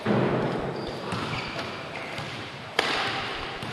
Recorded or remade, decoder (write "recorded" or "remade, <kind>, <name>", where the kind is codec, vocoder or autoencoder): remade, vocoder, BigVGAN v2